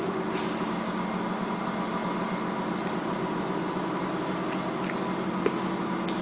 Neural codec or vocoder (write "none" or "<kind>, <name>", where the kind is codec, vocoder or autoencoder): none